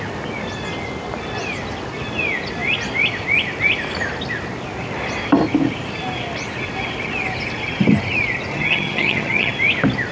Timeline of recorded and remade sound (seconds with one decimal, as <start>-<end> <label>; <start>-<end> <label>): 0.0-8.5 recorded; 8.5-9.5 remade; 9.5-10.1 recorded